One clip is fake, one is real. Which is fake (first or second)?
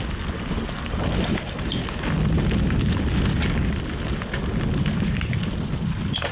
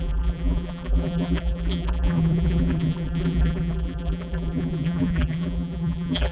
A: second